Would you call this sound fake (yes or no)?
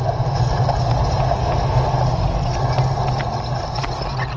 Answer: no